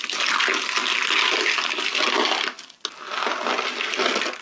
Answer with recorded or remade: recorded